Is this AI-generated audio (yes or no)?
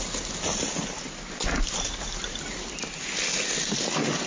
no